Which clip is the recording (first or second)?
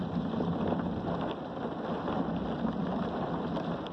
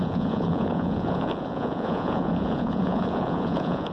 first